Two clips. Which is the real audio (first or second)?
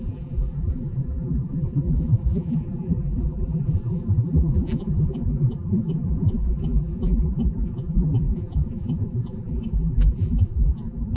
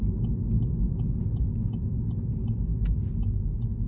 second